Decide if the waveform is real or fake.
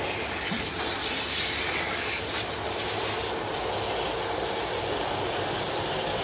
real